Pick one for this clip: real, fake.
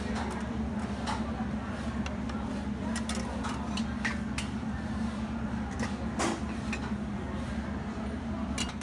real